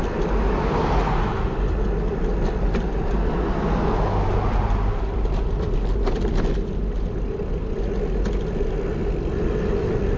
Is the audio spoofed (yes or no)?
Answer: no